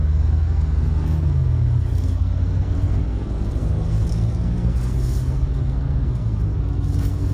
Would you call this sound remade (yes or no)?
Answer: yes